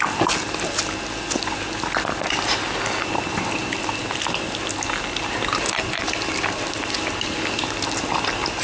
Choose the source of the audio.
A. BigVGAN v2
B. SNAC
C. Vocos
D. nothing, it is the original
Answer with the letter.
D